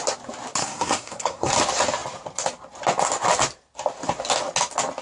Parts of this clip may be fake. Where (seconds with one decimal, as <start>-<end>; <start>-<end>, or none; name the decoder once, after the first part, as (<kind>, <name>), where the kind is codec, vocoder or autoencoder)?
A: 0.6-1.5 (codec, SNAC)